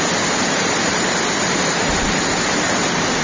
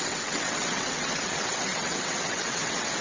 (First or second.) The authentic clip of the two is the first